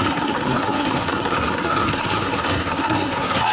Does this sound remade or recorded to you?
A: remade